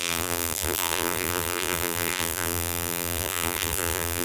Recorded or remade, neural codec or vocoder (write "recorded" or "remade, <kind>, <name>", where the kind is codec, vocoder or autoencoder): remade, vocoder, BigVGAN v2